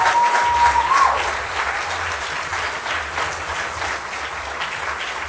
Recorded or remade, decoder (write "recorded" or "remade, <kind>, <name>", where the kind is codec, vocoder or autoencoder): recorded